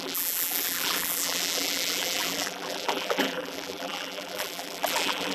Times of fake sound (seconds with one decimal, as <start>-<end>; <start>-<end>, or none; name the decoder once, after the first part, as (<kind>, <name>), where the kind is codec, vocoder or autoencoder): 0.0-5.3 (vocoder, BigVGAN v2)